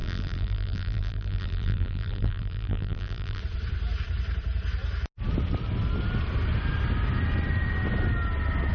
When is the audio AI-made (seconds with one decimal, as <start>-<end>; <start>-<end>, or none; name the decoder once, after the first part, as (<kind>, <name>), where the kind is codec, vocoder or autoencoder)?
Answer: 0.0-3.4 (vocoder, BigVGAN v2)